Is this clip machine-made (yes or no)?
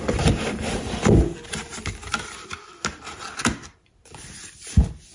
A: no